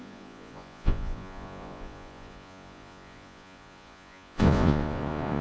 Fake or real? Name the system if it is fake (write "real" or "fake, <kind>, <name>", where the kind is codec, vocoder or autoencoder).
fake, vocoder, Vocos